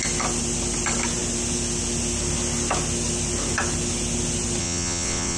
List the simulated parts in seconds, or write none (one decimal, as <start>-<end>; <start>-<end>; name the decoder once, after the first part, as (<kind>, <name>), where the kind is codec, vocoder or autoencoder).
4.6-5.4 (vocoder, WaveNeXt)